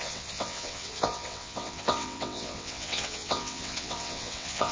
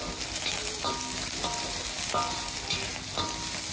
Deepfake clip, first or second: first